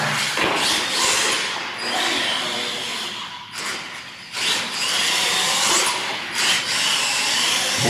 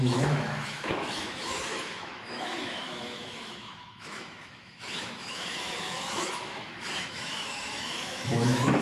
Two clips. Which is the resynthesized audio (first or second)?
second